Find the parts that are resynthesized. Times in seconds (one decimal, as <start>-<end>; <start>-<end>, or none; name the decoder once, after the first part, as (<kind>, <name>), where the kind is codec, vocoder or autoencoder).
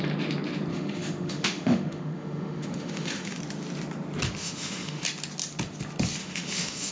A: 0.7-3.4 (autoencoder, DAC-VAE); 4.4-5.0; 6.2-6.9